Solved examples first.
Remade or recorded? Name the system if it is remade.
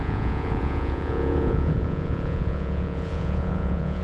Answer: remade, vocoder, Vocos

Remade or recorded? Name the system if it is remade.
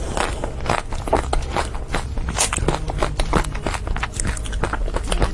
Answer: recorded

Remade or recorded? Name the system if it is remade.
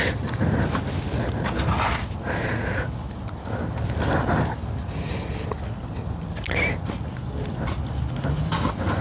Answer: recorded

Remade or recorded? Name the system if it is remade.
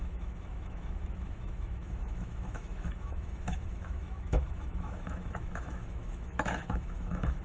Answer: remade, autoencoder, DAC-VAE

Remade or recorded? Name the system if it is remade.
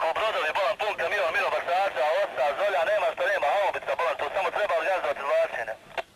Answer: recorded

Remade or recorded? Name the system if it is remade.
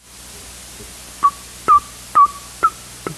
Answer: recorded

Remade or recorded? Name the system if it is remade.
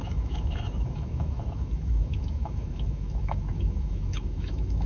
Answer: remade, autoencoder, DAC-VAE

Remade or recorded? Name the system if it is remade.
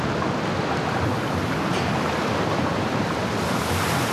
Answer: recorded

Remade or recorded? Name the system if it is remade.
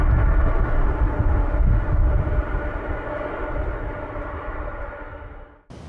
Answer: recorded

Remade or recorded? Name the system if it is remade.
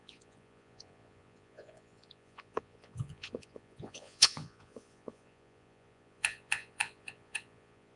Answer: remade, vocoder, Vocos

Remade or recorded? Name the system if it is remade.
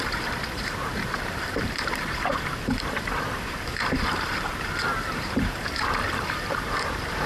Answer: remade, vocoder, BigVGAN v2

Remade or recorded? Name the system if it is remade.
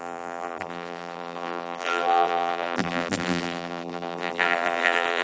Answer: remade, vocoder, BigVGAN v2